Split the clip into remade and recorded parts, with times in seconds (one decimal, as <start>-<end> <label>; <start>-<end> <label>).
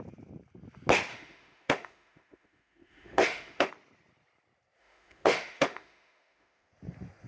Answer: 0.0-1.1 recorded; 1.1-3.7 remade; 3.7-4.8 recorded; 4.8-6.7 remade; 6.7-7.3 recorded